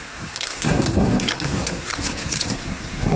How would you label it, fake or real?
fake